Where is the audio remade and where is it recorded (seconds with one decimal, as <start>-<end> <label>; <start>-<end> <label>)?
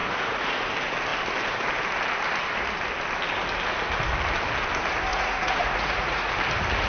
0.0-0.6 remade; 0.6-5.1 recorded; 5.1-6.3 remade; 6.3-6.9 recorded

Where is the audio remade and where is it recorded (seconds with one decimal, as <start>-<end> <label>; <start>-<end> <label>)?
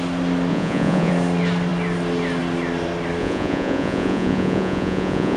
0.0-0.5 recorded; 0.5-1.1 remade; 1.1-3.2 recorded; 3.2-5.4 remade